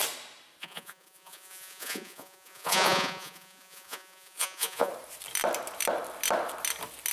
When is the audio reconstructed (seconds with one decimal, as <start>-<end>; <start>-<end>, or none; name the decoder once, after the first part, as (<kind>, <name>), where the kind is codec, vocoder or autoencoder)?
0.6-4.9 (vocoder, Vocos)